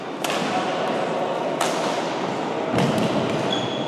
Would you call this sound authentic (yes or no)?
yes